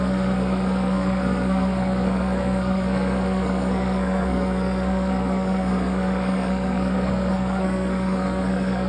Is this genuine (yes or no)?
no